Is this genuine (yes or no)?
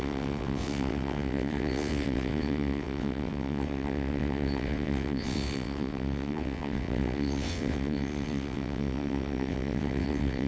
no